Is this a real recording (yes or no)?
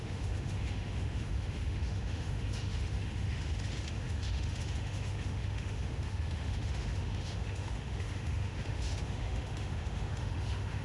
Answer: no